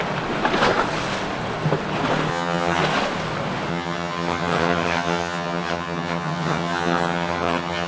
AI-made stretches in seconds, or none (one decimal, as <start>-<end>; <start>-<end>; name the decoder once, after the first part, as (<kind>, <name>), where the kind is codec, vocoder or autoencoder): 2.3-2.8 (vocoder, HiFi-GAN); 3.7-7.9